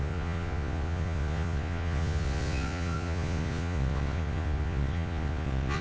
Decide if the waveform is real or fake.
fake